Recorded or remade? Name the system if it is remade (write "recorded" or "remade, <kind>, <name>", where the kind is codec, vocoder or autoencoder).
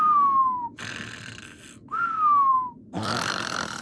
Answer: recorded